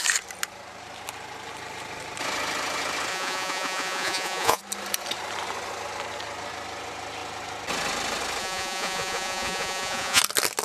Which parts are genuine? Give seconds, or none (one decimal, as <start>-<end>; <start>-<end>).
0.0-3.1; 4.6-8.4; 10.2-10.6